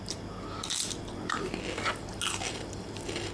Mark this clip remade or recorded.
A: recorded